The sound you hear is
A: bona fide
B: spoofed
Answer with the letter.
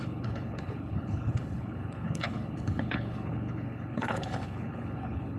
B